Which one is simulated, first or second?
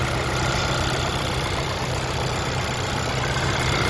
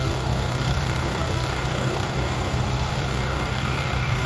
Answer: second